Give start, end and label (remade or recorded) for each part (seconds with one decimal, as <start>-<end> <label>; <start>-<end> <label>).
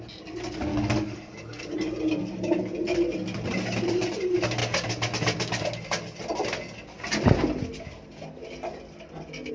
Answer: 0.0-0.7 recorded; 0.7-1.6 remade; 1.6-9.5 recorded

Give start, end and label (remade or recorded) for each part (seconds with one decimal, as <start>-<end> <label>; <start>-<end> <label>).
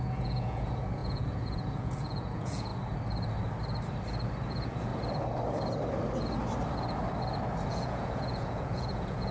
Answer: 0.0-2.7 remade; 2.7-4.5 recorded; 4.5-4.9 remade; 4.9-7.7 recorded; 7.7-9.3 remade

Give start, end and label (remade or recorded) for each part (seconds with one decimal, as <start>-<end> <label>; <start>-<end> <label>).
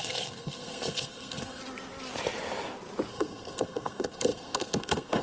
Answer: 0.0-1.6 remade; 1.6-3.1 recorded; 3.1-5.2 remade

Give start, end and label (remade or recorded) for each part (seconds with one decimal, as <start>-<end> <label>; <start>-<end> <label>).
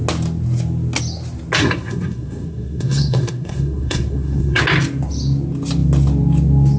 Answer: 0.0-1.6 recorded; 1.6-4.6 remade; 4.6-6.8 recorded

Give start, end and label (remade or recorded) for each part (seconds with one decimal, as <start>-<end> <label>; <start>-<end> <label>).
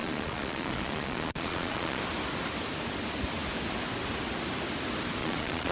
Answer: 0.0-2.0 remade; 2.0-5.2 recorded; 5.2-5.7 remade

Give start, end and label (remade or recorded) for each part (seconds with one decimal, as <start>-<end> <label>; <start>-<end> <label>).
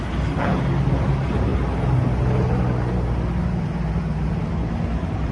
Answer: 0.0-5.3 recorded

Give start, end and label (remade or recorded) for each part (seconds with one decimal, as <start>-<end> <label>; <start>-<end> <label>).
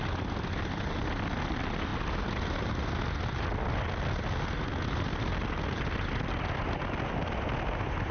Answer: 0.0-8.1 recorded